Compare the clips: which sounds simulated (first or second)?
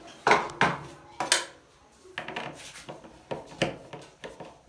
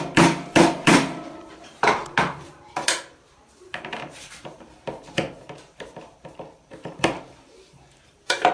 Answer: second